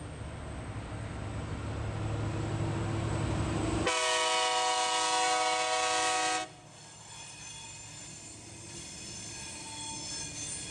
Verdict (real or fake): real